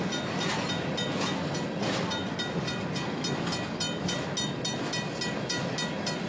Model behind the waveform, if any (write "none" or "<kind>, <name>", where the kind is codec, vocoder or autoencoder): none